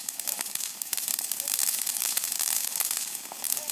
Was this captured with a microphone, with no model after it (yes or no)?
no